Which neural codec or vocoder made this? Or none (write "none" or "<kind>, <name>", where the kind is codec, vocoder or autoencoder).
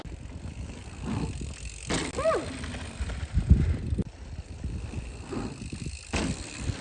none